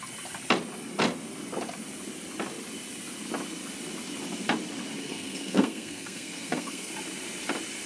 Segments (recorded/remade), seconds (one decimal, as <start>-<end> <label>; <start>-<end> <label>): 0.0-5.0 recorded; 5.0-6.9 remade; 6.9-7.9 recorded